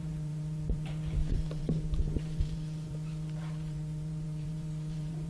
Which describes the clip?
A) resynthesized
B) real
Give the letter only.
A